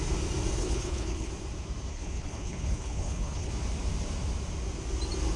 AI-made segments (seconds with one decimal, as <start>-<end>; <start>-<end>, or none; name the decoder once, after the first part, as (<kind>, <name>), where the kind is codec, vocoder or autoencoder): 0.6-1.3 (codec, HILCodec); 1.9-3.5